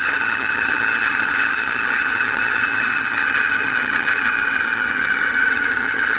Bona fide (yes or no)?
no